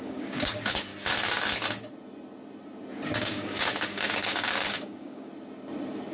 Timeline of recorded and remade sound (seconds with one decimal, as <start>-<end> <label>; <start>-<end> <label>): 0.0-0.9 remade; 0.9-3.2 recorded; 3.2-5.3 remade; 5.3-6.1 recorded